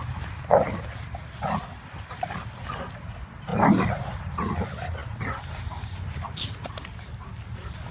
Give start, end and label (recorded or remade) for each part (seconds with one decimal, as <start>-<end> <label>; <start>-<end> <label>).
0.0-7.9 recorded